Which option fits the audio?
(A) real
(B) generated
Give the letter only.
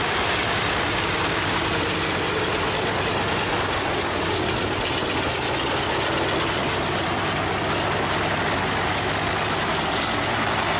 A